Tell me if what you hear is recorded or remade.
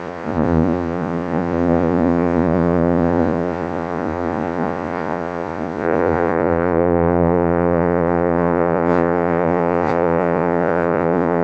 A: remade